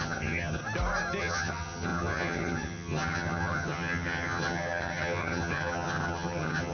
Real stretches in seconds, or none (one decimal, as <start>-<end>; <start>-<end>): 0.6-1.2